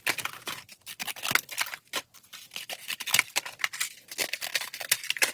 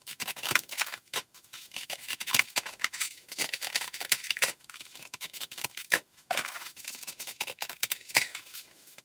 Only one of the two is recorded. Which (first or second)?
first